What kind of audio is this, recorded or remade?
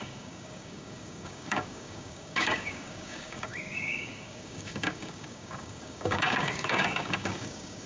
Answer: remade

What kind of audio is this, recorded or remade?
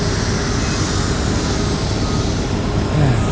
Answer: recorded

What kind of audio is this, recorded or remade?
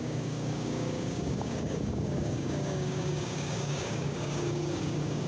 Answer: remade